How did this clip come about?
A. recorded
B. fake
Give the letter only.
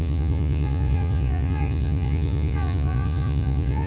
B